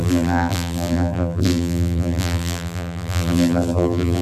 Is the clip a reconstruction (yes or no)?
yes